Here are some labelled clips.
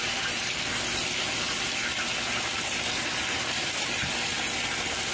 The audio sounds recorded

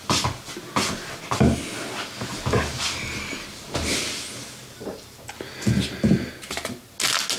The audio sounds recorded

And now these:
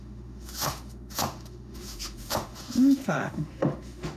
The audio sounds remade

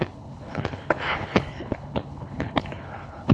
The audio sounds remade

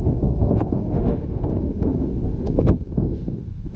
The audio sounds remade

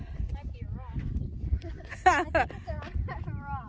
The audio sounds recorded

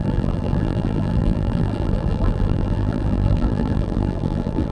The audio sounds remade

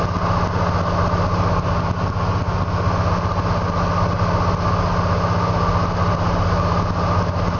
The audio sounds recorded